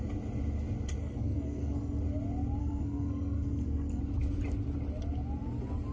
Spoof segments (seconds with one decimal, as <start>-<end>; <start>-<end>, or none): 1.0-2.0; 2.6-4.0